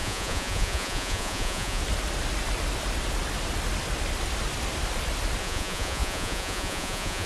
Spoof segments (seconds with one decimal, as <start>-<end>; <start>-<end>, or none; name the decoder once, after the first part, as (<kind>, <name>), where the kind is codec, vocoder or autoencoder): 0.0-1.8 (vocoder, Vocos); 5.4-7.3

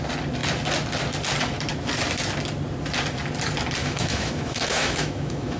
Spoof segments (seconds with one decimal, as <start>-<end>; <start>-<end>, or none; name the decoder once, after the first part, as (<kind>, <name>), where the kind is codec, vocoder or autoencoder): 3.8-5.6 (autoencoder, DAC-VAE)

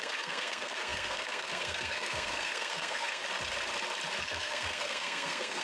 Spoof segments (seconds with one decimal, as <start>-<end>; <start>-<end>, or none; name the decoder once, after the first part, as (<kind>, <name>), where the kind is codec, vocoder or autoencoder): 0.0-3.2 (codec, SNAC); 4.2-5.6

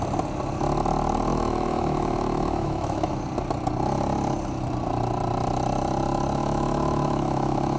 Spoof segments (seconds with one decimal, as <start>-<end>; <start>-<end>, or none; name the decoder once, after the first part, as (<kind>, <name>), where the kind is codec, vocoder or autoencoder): 1.3-3.1 (autoencoder, DAC-VAE); 6.4-7.8